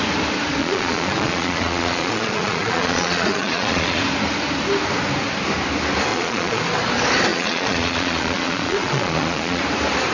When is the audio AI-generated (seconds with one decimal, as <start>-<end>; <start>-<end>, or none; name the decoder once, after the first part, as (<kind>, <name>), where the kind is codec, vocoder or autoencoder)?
0.6-4.0 (vocoder, Vocos); 6.1-6.6; 7.3-9.6